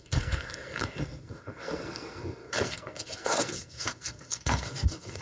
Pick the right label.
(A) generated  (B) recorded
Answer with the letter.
A